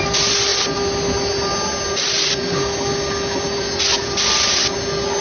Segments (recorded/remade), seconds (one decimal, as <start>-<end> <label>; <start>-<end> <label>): 0.0-5.2 recorded